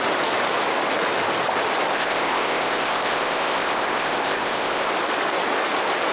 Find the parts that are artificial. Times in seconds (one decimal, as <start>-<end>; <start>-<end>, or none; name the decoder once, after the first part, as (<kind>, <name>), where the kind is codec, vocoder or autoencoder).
1.9-4.9 (codec, ZipCodec)